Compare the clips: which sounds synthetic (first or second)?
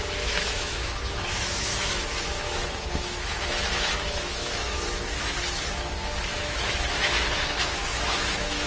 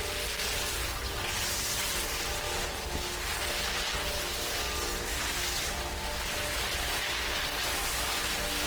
first